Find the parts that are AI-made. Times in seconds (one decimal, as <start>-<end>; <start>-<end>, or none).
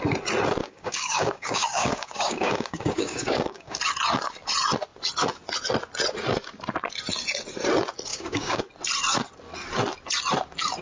0.6-3.8; 8.1-8.6